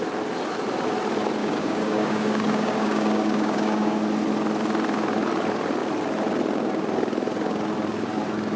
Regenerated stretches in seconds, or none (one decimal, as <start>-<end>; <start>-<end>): 1.4-4.0